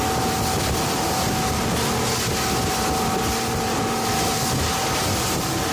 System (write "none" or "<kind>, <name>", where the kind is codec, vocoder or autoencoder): none